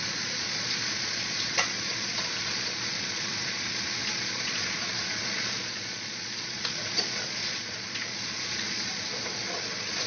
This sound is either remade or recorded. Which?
remade